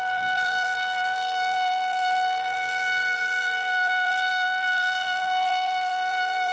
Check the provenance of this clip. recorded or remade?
remade